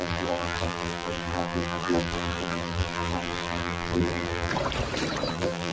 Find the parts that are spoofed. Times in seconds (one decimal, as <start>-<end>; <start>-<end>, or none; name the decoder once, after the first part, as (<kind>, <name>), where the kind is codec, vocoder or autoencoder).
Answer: 0.0-4.5 (vocoder, BigVGAN v2); 5.3-5.7